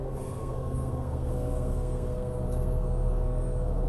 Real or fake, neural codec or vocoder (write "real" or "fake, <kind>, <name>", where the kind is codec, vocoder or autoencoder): fake, codec, SNAC